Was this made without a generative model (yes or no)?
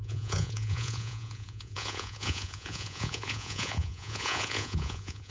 no